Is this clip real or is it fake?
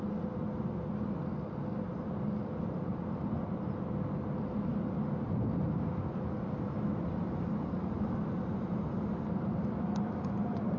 real